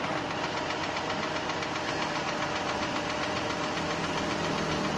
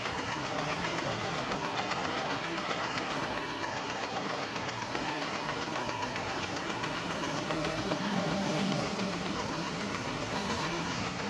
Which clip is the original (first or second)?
first